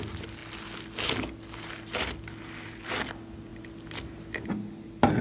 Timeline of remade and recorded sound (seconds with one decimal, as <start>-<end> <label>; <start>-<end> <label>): 0.0-5.2 recorded